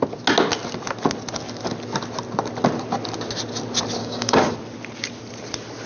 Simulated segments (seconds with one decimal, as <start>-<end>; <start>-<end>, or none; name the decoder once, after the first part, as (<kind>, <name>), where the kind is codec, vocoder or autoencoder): 4.0-4.5 (codec, DAC)

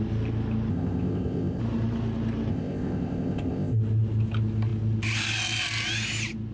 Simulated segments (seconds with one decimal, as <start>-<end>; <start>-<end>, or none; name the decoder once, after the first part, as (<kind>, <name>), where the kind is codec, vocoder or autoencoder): 0.7-1.6 (codec, ZipCodec); 2.5-3.8